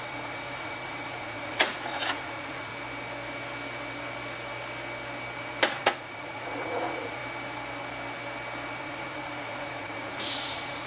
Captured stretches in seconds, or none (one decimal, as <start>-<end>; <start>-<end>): 2.7-5.8; 7.2-8.8